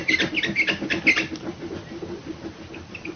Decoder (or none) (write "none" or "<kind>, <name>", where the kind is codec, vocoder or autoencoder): none